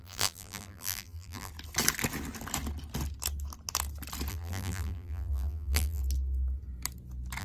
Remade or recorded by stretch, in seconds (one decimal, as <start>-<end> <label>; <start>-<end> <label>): 0.0-1.5 remade; 1.5-4.3 recorded; 4.3-6.0 remade; 6.0-7.4 recorded

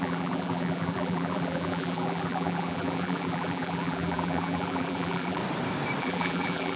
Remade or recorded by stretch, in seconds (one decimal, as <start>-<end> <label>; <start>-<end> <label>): 0.0-5.4 remade; 5.4-6.0 recorded; 6.0-6.8 remade

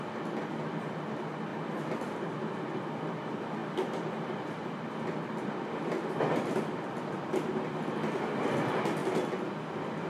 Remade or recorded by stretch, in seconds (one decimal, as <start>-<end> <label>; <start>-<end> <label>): 0.0-1.5 recorded; 1.5-2.4 remade; 2.4-3.6 recorded; 3.6-6.1 remade; 6.1-10.1 recorded